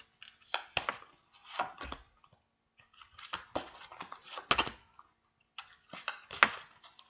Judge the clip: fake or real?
real